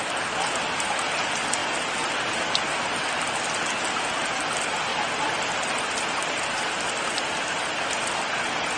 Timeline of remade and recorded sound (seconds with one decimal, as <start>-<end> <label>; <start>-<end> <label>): 0.0-8.8 recorded